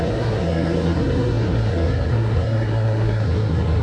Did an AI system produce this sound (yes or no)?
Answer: yes